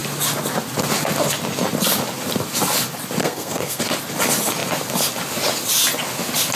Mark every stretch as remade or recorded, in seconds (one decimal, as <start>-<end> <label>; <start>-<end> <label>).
0.0-3.2 recorded; 3.2-3.8 remade; 3.8-6.6 recorded

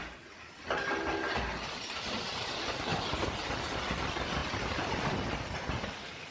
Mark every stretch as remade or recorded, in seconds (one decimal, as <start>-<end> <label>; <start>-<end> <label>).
0.0-6.3 recorded